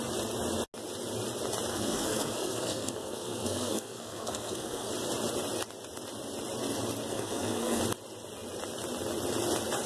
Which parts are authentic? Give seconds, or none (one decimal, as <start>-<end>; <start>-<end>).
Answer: 0.0-1.7; 4.9-7.1; 7.8-9.9